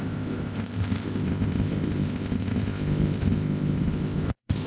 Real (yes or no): no